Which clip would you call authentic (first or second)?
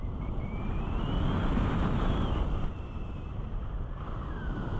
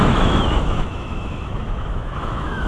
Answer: first